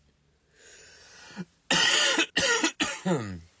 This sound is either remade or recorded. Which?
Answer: recorded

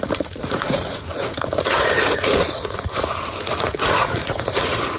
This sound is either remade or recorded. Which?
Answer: remade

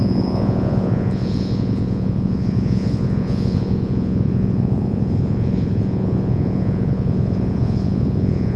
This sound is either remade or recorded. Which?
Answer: remade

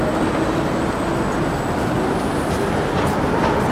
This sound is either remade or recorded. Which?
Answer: recorded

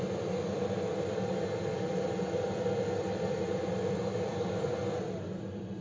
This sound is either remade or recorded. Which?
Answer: recorded